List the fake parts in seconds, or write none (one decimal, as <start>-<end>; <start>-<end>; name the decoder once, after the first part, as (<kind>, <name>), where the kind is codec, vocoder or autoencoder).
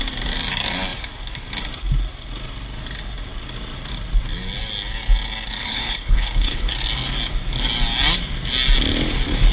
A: 5.6-6.7 (codec, HILCodec)